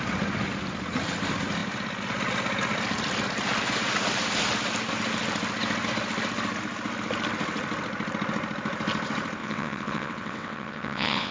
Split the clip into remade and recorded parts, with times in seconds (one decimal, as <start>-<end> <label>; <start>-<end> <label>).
0.0-9.4 recorded; 9.4-11.3 remade